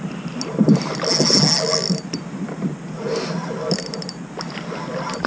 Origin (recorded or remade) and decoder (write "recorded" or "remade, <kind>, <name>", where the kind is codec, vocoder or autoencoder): recorded